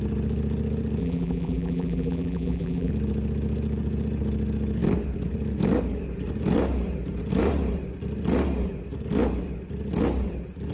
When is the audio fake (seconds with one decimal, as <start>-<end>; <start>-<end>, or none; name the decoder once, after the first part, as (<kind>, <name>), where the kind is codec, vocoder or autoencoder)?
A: 1.0-2.9 (vocoder, BigVGAN v2)